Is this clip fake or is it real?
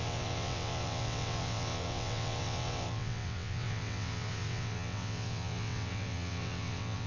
fake